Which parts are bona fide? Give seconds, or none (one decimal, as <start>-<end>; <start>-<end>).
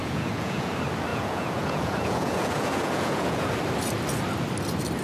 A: 0.7-1.1; 3.5-5.0